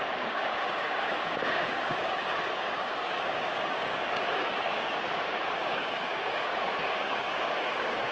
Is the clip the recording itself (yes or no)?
no